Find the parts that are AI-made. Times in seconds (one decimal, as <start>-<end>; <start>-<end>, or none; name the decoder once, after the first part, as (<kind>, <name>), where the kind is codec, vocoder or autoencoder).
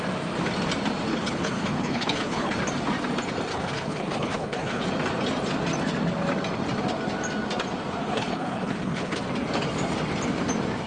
1.1-2.6 (codec, HILCodec); 3.5-4.8; 8.0-9.2